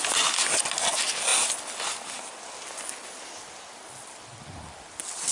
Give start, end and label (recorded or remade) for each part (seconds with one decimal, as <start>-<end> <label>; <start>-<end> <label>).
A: 0.0-5.3 recorded